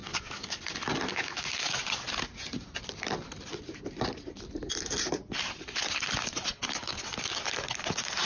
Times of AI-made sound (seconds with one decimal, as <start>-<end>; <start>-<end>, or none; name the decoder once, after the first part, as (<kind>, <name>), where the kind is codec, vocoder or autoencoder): 0.0-0.6 (codec, DAC); 1.1-1.8